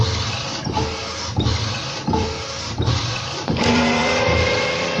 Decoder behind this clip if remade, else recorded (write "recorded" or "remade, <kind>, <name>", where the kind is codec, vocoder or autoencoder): remade, vocoder, BigVGAN v2